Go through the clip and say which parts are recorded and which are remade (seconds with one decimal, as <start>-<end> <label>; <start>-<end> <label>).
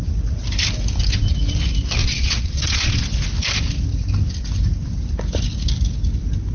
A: 0.0-2.0 recorded; 2.0-3.0 remade; 3.0-6.5 recorded